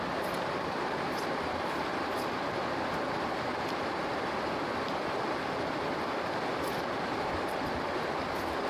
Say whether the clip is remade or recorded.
recorded